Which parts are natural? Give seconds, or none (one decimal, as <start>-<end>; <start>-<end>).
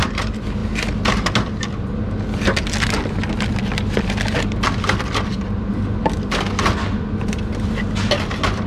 0.0-8.7